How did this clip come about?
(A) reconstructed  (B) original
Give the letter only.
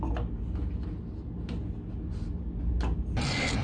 B